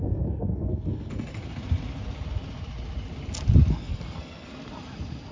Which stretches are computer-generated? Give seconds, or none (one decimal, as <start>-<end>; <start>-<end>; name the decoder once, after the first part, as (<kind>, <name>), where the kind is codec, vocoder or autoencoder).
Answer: 0.0-1.4 (codec, SNAC); 3.7-4.5